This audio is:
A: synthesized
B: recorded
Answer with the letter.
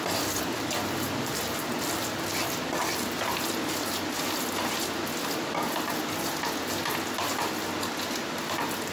B